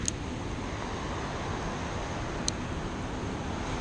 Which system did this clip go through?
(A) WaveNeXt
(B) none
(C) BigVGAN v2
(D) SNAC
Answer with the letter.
B